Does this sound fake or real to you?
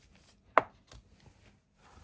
real